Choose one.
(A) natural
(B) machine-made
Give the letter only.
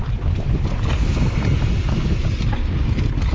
A